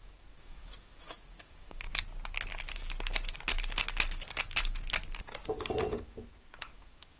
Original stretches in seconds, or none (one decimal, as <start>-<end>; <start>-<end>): 1.9-6.0